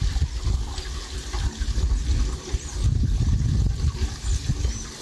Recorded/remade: recorded